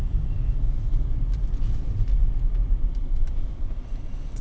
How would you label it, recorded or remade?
remade